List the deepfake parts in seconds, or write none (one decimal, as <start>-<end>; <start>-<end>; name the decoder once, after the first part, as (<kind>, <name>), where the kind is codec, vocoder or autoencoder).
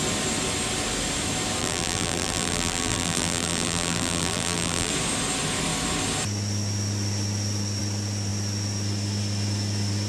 1.6-4.9 (vocoder, BigVGAN v2)